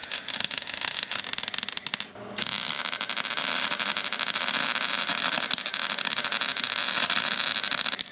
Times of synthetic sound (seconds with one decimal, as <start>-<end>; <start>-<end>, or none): 0.0-1.2